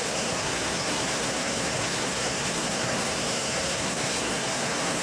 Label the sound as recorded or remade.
remade